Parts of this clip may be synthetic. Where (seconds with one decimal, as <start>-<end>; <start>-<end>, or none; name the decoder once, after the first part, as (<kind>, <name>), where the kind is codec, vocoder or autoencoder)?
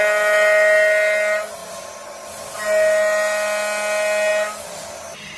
1.6-2.5 (vocoder, BigVGAN v2)